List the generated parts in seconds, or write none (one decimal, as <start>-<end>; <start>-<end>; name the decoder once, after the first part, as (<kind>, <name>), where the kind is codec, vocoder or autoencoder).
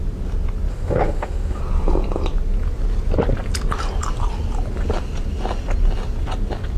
0.7-1.6 (autoencoder, DAC-VAE)